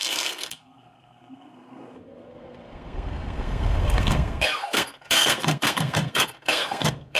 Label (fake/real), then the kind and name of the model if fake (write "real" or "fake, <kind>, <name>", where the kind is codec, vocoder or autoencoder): fake, codec, SNAC